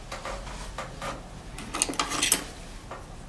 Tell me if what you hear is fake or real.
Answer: real